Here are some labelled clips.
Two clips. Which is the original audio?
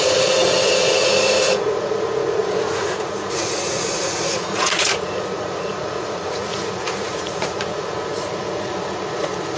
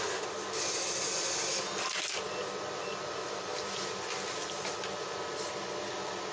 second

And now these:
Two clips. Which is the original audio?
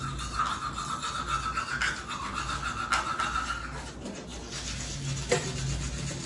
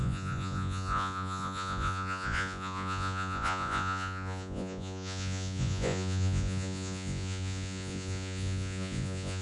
first